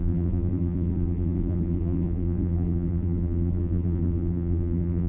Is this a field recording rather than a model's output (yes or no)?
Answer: no